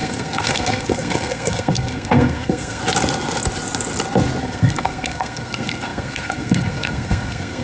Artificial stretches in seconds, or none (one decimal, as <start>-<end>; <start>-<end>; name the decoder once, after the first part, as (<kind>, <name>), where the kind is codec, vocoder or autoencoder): 0.0-2.8 (codec, SNAC); 4.4-7.6

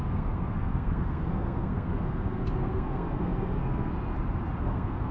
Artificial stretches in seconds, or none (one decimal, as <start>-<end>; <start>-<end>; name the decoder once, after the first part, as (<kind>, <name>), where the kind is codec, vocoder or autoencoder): 0.0-3.9 (codec, SNAC); 4.6-5.1

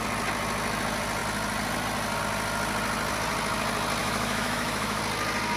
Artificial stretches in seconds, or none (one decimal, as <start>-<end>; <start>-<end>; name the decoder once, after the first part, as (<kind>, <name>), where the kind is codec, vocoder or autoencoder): 4.0-5.0 (autoencoder, DAC-VAE)

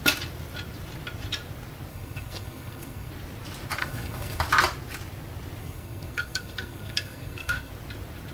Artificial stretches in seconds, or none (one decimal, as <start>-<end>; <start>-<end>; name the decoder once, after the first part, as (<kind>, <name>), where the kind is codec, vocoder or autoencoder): 1.9-3.1 (codec, SNAC); 3.8-4.4; 5.6-7.7

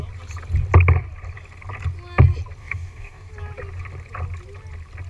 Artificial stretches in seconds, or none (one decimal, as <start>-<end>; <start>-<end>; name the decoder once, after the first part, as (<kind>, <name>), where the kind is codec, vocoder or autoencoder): 2.6-3.3 (codec, DAC)

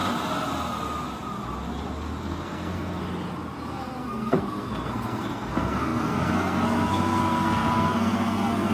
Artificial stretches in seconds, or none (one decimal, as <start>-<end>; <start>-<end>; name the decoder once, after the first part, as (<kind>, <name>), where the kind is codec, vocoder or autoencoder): 2.2-3.0 (codec, SNAC); 3.7-8.7